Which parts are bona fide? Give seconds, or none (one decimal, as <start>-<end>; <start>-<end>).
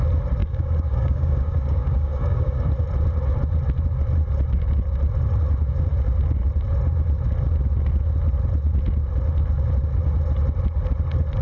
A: 0.0-0.4; 2.7-11.4